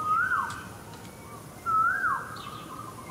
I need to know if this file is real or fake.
real